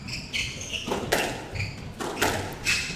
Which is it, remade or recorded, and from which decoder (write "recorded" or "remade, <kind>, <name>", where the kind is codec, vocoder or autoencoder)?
recorded